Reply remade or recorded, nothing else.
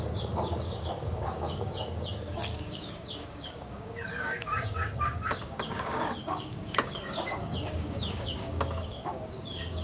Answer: remade